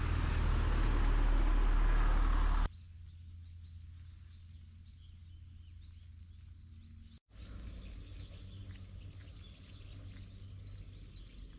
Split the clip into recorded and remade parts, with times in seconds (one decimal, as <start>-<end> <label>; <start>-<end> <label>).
0.0-11.6 recorded